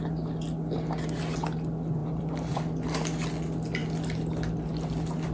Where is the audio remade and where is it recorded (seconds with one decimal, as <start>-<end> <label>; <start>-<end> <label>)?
0.0-2.0 recorded; 2.0-2.6 remade; 2.6-5.3 recorded